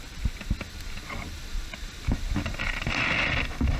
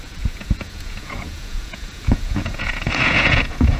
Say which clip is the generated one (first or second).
second